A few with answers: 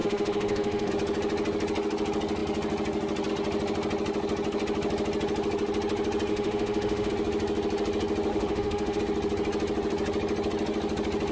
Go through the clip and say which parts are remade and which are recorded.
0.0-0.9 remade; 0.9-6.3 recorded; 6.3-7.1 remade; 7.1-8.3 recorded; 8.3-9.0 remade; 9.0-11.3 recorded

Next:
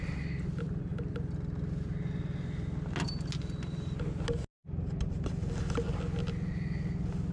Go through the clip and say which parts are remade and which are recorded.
0.0-7.3 recorded

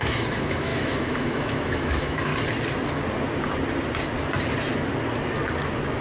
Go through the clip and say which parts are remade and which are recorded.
0.0-2.3 remade; 2.3-6.0 recorded

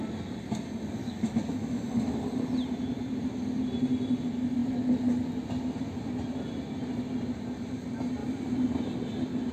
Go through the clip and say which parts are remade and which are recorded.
0.0-1.0 recorded; 1.0-2.2 remade; 2.2-9.5 recorded

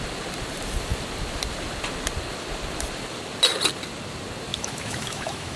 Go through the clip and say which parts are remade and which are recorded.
0.0-4.5 recorded; 4.5-5.6 remade

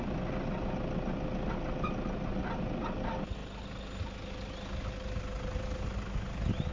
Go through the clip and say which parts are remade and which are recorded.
0.0-6.7 recorded